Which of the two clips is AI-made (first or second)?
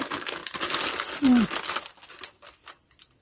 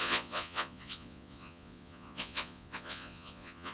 second